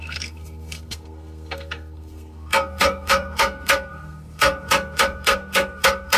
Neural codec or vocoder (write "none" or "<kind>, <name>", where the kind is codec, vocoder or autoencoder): codec, SNAC